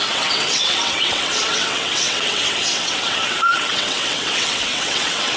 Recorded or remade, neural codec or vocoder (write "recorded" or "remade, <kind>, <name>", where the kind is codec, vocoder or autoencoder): remade, vocoder, WaveNeXt